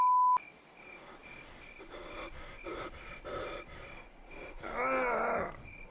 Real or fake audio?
real